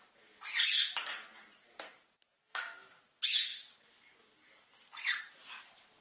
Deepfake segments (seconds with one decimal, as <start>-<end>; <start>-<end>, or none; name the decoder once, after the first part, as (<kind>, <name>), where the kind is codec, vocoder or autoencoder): 2.4-3.0 (autoencoder, DAC-VAE)